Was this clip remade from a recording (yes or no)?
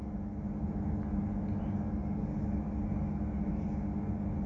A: no